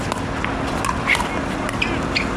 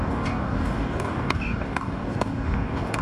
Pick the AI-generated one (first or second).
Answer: second